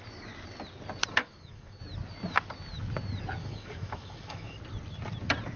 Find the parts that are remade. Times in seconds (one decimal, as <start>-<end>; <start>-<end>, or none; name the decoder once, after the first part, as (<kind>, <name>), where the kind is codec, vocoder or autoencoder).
1.2-1.8 (autoencoder, DAC-VAE); 3.4-4.6